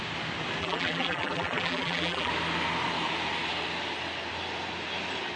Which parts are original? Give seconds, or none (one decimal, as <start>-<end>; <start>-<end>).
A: 0.0-0.6; 2.3-5.4